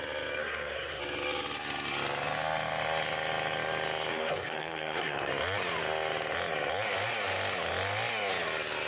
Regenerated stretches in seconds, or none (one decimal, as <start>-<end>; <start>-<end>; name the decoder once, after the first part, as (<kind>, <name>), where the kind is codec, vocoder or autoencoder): 0.4-1.0 (codec, SNAC); 4.1-5.3

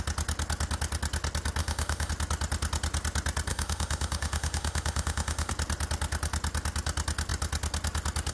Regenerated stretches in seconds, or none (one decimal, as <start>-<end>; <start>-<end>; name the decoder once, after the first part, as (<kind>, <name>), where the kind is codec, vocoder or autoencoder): 1.6-2.1 (autoencoder, DAC-VAE); 3.5-5.5

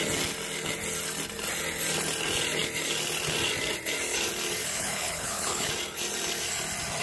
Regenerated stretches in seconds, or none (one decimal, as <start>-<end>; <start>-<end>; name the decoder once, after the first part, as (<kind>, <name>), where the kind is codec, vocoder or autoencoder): 4.6-5.7 (codec, HILCodec)